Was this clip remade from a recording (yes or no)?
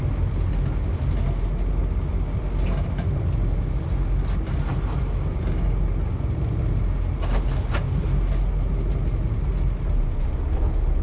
no